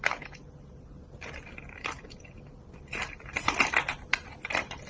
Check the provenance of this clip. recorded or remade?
recorded